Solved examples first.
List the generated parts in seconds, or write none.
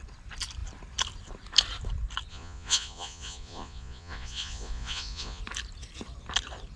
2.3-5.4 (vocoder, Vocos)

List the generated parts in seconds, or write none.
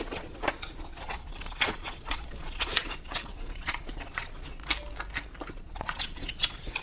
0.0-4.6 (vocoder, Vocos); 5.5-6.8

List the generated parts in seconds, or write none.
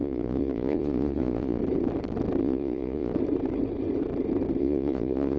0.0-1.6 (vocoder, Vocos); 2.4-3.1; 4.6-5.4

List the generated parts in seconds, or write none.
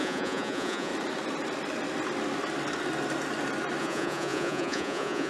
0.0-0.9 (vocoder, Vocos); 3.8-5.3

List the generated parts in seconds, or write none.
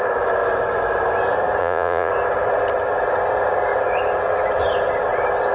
1.6-2.1 (vocoder, Vocos)